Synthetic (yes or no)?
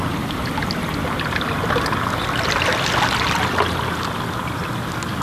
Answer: no